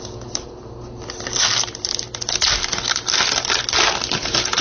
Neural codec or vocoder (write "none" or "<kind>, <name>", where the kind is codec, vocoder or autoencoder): none